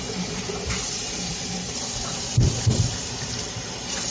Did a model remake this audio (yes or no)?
yes